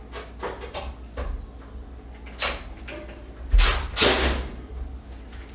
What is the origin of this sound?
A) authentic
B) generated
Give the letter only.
A